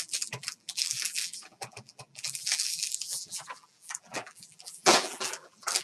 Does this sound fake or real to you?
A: fake